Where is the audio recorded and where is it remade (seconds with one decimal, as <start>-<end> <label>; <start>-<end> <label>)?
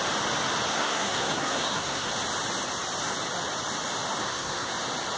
0.0-0.7 recorded; 0.7-2.1 remade; 2.1-4.2 recorded; 4.2-4.7 remade; 4.7-5.2 recorded